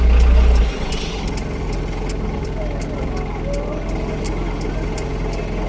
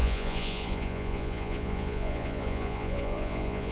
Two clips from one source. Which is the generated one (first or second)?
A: second